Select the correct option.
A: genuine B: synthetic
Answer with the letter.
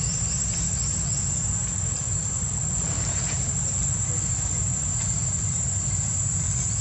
A